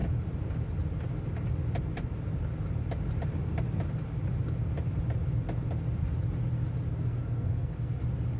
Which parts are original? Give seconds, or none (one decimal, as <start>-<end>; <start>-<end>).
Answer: 0.0-6.9; 8.0-8.4